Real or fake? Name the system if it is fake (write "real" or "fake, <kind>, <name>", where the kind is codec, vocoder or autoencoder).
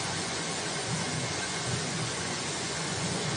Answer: fake, vocoder, Vocos